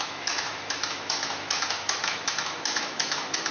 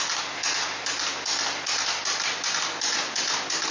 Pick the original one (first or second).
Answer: second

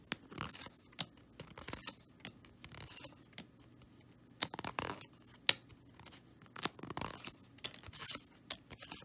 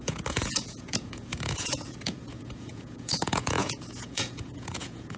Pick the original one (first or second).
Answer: first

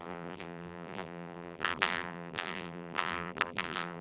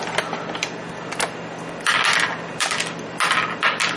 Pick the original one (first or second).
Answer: second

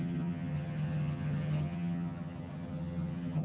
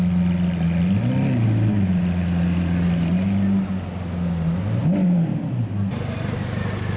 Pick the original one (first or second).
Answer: second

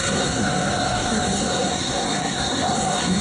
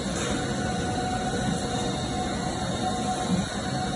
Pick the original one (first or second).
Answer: second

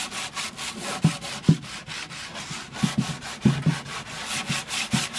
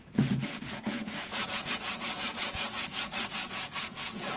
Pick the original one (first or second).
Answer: first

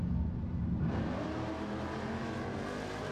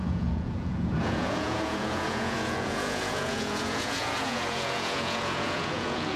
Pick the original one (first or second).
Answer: first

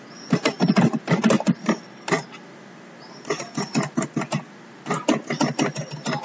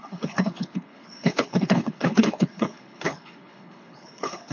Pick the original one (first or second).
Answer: first